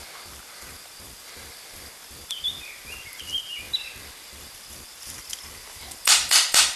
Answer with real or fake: fake